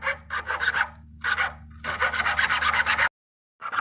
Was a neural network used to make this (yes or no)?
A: no